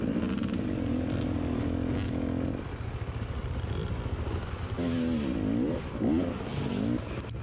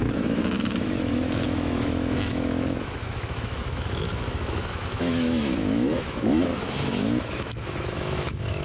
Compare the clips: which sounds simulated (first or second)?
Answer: second